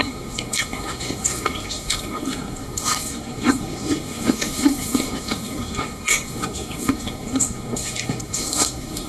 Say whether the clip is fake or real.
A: fake